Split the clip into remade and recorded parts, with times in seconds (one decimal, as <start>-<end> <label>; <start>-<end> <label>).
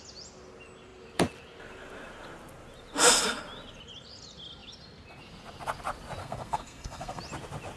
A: 0.0-6.2 recorded; 6.2-7.2 remade; 7.2-7.8 recorded